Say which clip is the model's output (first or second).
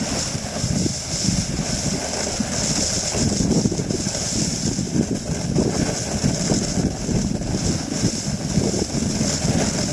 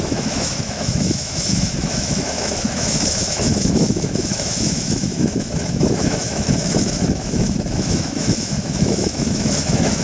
second